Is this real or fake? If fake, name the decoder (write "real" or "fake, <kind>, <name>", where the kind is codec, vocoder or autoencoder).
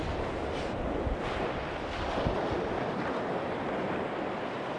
real